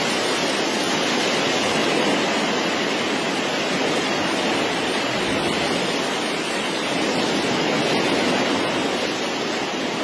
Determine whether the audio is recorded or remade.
recorded